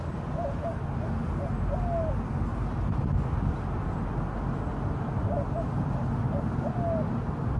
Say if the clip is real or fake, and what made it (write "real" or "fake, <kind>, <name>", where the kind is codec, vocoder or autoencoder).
real